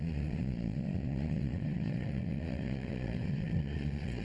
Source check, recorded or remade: remade